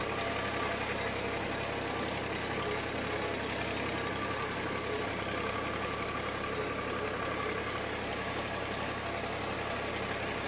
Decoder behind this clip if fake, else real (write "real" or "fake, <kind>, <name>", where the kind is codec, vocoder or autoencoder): real